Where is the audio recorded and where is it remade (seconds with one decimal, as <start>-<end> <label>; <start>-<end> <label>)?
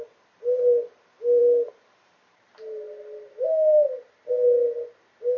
0.0-5.4 recorded